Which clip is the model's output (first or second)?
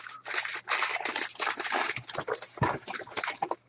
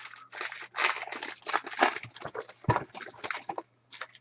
first